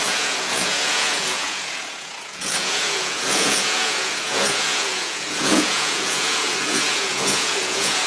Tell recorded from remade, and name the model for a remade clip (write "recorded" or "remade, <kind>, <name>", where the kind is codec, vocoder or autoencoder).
remade, vocoder, Vocos